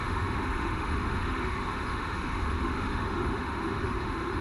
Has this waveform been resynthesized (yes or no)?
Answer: yes